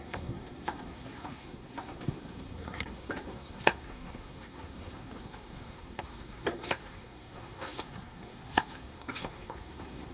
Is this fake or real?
fake